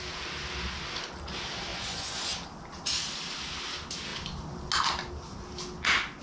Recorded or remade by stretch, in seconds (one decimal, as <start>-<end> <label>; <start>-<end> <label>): 0.0-1.7 recorded; 1.7-2.3 remade; 2.3-6.2 recorded